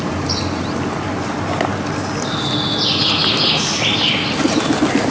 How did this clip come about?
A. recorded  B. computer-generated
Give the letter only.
A